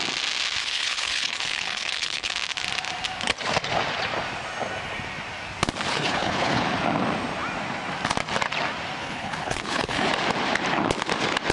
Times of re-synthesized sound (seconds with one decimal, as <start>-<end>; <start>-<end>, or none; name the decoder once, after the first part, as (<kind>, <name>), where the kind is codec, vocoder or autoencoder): 0.6-2.3 (codec, HILCodec); 5.9-6.6; 9.0-10.1